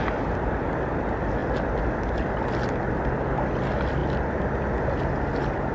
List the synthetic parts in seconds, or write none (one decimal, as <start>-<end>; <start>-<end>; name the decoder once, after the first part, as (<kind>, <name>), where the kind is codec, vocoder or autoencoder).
none